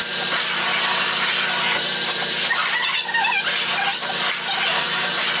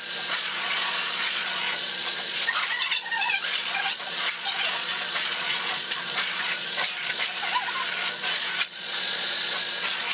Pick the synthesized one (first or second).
second